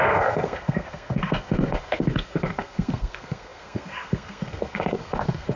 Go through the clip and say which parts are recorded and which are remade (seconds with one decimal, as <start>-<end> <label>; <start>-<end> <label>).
0.0-5.6 remade